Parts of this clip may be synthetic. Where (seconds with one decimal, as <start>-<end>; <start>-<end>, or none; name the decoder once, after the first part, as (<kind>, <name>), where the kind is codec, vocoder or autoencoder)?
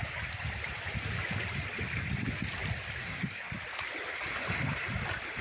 3.0-3.5 (codec, SNAC)